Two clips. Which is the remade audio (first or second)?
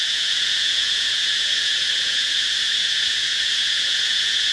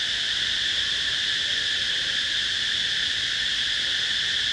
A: first